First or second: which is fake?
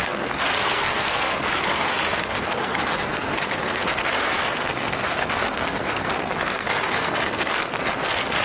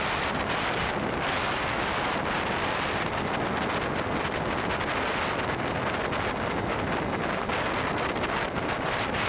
first